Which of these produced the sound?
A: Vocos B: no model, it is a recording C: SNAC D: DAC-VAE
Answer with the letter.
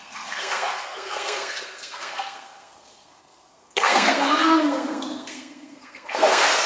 C